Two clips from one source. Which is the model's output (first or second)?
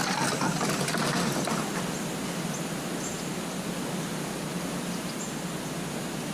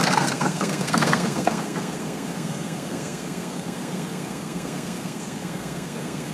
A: second